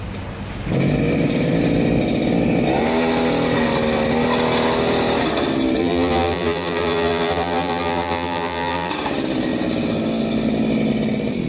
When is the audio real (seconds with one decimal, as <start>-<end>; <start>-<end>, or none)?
0.0-5.8; 8.9-11.5